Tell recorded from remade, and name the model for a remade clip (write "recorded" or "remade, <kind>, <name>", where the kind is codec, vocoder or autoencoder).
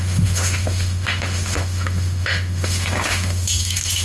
remade, autoencoder, DAC-VAE